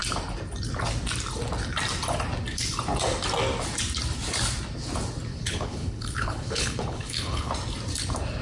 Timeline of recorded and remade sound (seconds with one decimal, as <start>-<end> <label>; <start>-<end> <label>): 0.0-5.3 recorded; 5.3-7.5 remade; 7.5-8.4 recorded